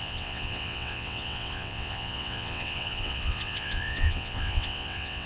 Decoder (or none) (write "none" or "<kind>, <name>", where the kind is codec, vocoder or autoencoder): vocoder, WaveNeXt